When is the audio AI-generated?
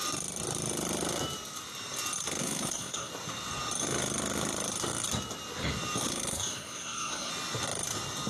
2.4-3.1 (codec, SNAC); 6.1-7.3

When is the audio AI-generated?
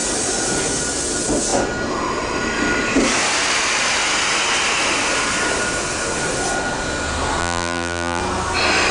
7.4-8.2 (vocoder, BigVGAN v2)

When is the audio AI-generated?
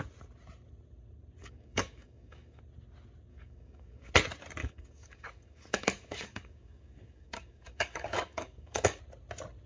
1.4-2.6 (codec, DAC); 3.3-4.1; 4.6-9.0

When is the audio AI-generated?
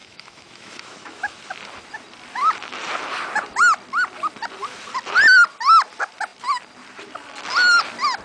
0.0-1.4 (autoencoder, DAC-VAE)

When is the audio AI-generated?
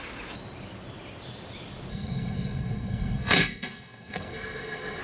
1.9-5.0 (codec, SNAC)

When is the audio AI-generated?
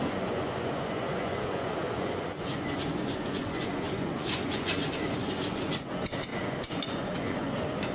0.0-7.9 (vocoder, Vocos)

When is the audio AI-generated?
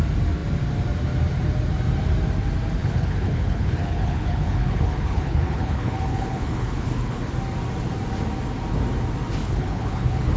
2.8-7.2 (codec, HILCodec); 9.4-10.4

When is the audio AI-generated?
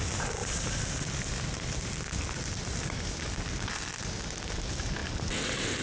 none